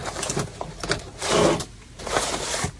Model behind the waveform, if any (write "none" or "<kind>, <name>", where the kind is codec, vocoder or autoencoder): none